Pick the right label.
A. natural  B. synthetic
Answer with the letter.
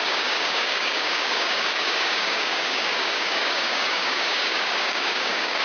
B